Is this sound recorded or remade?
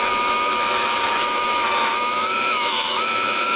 remade